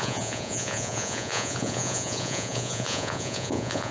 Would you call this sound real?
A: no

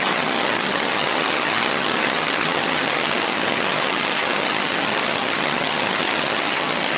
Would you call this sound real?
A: no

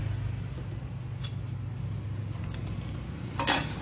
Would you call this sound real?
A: yes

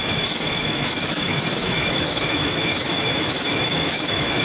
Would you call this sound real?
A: no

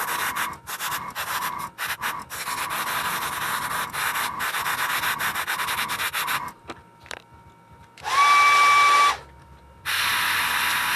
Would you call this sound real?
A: yes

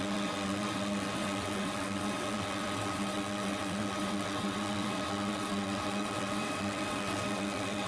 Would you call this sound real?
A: no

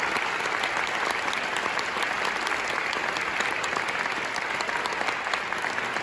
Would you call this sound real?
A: yes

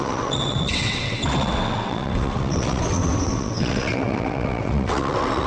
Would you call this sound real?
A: no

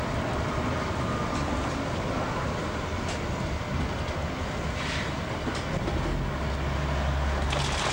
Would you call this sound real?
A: yes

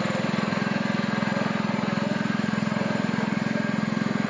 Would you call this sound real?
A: yes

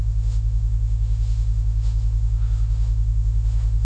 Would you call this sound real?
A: no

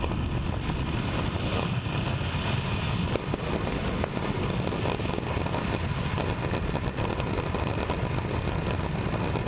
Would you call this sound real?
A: yes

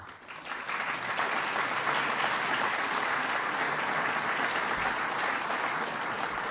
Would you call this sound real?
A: yes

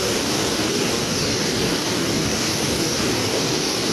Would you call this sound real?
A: no